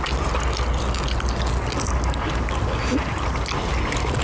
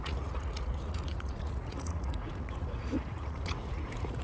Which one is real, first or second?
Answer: first